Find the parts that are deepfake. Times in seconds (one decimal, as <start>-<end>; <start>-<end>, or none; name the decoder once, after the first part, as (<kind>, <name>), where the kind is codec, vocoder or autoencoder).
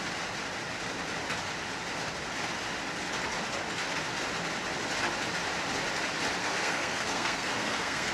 6.4-8.1 (codec, SNAC)